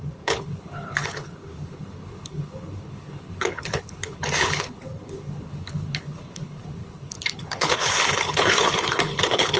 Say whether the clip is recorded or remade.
remade